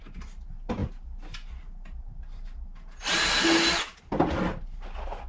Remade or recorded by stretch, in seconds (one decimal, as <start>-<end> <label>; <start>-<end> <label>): 0.0-5.3 recorded